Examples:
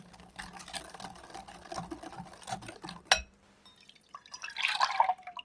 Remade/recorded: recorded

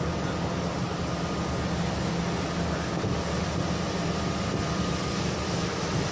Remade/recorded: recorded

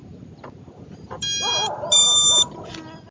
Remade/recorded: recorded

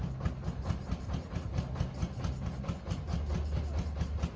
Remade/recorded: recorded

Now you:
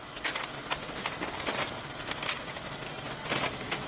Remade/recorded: recorded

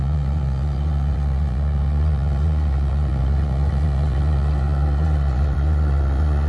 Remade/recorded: remade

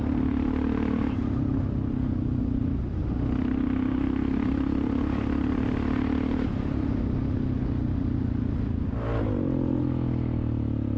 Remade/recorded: recorded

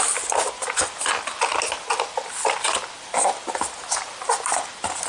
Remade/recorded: recorded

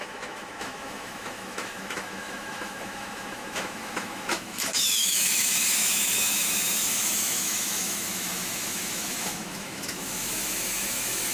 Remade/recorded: remade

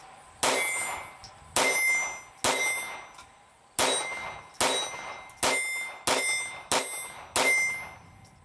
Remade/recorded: recorded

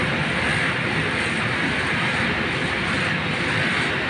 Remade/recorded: remade